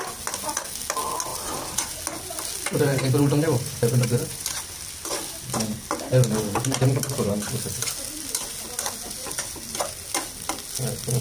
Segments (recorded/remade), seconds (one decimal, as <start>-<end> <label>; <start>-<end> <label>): 0.0-1.3 recorded; 1.3-2.0 remade; 2.0-2.9 recorded; 2.9-4.6 remade; 4.6-11.2 recorded